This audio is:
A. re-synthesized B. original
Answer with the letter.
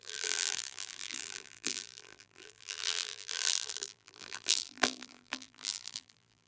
A